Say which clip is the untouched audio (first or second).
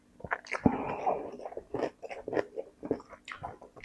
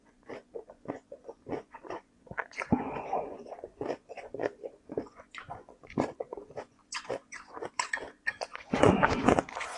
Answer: first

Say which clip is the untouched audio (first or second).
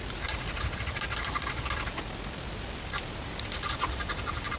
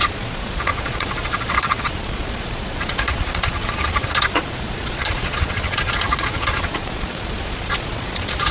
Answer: first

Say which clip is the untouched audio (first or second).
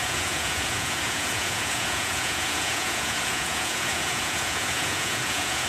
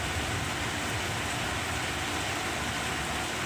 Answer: second